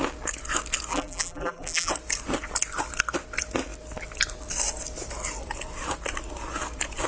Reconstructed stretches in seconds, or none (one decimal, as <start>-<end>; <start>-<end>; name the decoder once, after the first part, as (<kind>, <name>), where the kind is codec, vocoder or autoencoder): 0.9-1.9 (vocoder, BigVGAN v2)